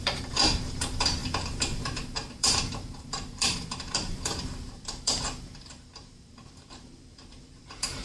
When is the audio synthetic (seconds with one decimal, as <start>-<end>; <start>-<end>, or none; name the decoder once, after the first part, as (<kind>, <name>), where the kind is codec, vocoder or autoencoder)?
0.0-8.0 (vocoder, BigVGAN v2)